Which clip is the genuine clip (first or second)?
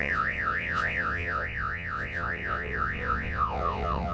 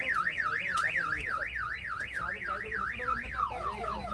second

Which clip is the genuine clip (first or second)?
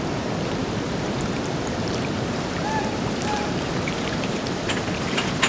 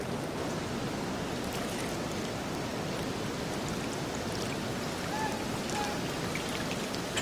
second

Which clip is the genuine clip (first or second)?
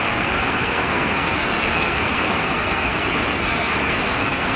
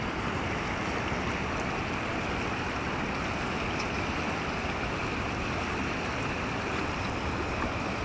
second